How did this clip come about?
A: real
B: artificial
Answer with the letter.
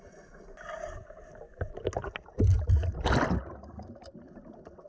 A